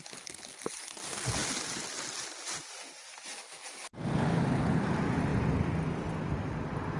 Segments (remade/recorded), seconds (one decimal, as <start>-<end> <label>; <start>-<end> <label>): 0.0-7.0 recorded

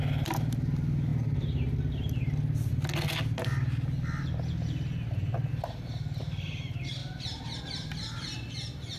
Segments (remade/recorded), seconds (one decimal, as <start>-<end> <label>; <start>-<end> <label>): 0.0-9.0 recorded

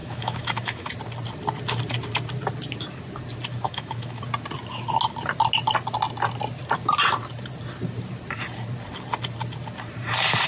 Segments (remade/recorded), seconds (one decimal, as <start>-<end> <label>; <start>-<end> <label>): 0.0-0.9 remade; 0.9-3.5 recorded; 3.5-4.2 remade; 4.2-10.5 recorded

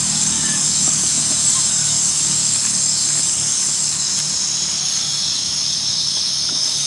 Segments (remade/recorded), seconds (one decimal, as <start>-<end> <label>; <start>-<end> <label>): 0.0-1.1 remade; 1.1-1.7 recorded; 1.7-4.1 remade; 4.1-4.8 recorded; 4.8-6.9 remade

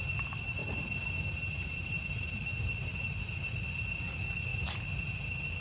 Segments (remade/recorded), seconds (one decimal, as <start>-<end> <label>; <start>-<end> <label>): 0.0-4.5 recorded; 4.5-5.6 remade

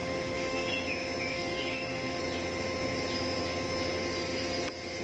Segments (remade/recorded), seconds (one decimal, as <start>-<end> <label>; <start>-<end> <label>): 0.0-0.7 remade; 0.7-1.3 recorded; 1.3-2.2 remade; 2.2-5.0 recorded